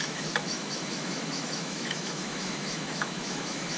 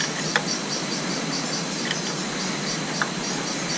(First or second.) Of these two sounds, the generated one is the first